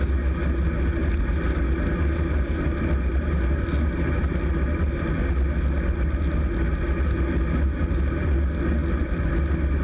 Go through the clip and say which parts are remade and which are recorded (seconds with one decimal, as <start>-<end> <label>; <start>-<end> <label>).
0.0-9.8 recorded